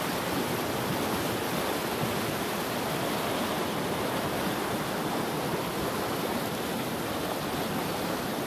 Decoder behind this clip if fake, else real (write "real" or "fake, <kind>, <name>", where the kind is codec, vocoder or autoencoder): real